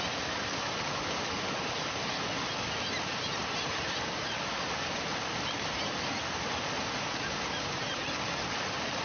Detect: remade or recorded recorded